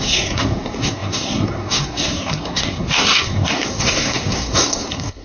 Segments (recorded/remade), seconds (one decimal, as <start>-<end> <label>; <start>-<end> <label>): 0.0-5.2 remade